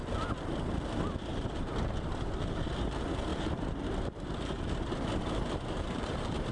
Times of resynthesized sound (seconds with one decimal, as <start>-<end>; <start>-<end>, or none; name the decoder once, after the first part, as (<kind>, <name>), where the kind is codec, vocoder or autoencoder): 3.3-6.5 (vocoder, BigVGAN v2)